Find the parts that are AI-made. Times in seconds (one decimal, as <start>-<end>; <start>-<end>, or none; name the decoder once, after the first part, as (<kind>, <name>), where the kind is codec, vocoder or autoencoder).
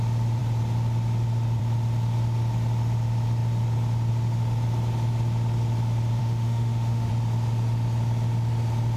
6.2-7.1 (autoencoder, DAC-VAE)